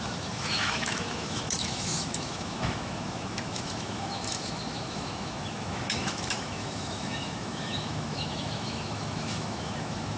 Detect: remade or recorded remade